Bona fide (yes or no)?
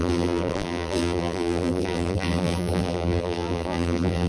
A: no